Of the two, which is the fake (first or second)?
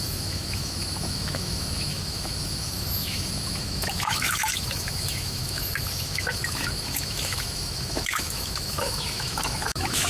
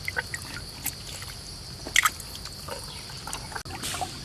first